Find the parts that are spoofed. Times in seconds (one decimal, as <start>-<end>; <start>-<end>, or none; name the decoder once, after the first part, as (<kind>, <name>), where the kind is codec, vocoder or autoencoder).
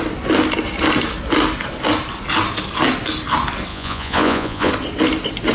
3.7-4.7 (vocoder, Vocos)